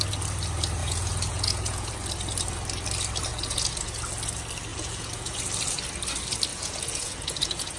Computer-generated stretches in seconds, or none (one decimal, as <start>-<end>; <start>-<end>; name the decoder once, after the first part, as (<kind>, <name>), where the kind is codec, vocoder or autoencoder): 0.8-1.9 (vocoder, Vocos); 3.3-4.0; 4.7-5.4; 6.5-7.8